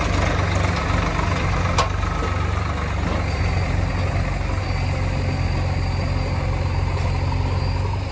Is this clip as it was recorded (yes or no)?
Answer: yes